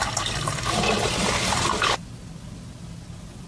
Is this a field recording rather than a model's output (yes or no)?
yes